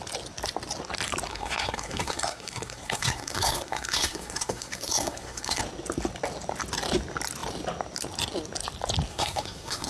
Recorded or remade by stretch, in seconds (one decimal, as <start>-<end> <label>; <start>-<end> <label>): 0.0-1.3 recorded; 1.3-5.6 remade; 5.6-9.1 recorded; 9.1-9.9 remade